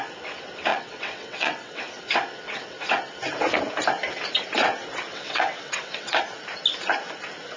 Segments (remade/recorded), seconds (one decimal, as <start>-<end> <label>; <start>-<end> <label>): 0.0-0.7 recorded; 0.7-1.8 remade; 1.8-5.1 recorded; 5.1-6.2 remade; 6.2-7.6 recorded